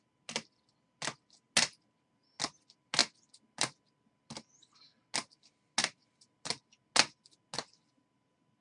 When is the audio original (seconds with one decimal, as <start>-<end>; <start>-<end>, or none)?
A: 0.0-8.6